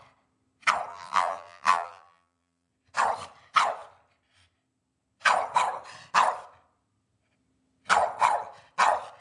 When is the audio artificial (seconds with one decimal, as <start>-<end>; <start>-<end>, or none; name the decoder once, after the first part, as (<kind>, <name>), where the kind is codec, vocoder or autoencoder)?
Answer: 0.9-2.7 (vocoder, BigVGAN v2)